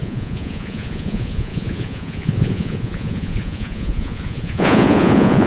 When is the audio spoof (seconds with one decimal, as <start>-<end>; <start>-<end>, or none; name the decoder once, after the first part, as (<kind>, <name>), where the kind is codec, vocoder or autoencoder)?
0.0-5.5 (vocoder, Vocos)